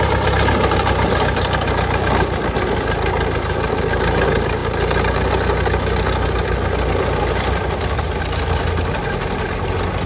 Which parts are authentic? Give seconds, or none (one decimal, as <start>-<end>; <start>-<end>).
0.0-10.1